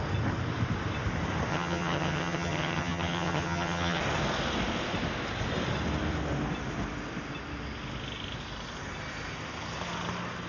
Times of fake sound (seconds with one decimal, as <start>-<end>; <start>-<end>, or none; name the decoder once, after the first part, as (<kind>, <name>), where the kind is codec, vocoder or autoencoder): 1.5-4.0 (vocoder, HiFi-GAN)